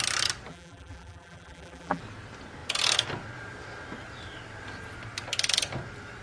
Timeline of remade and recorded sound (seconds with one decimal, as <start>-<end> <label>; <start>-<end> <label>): 0.0-0.5 recorded; 0.5-2.0 remade; 2.0-6.2 recorded